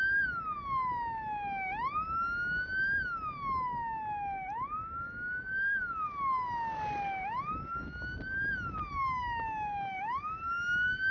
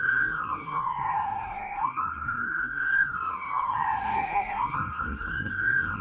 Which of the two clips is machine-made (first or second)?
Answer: second